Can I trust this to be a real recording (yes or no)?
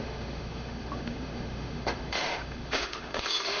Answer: no